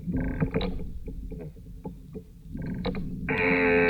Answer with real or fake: real